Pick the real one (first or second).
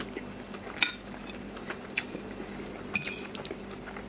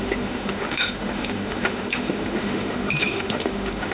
first